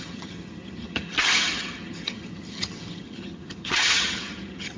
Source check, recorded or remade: remade